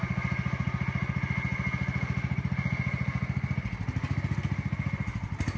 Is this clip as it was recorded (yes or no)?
yes